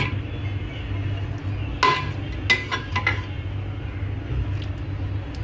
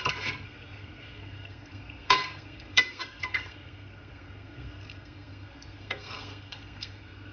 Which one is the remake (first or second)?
second